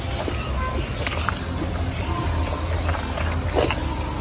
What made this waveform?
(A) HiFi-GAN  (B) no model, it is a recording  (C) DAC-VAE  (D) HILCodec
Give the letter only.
B